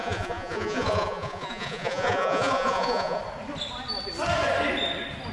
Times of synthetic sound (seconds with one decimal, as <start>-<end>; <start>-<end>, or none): 0.0-3.2